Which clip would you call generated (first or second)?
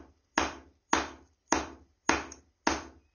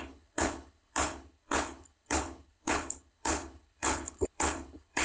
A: second